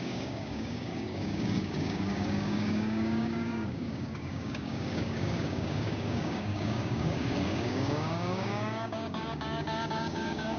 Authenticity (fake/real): fake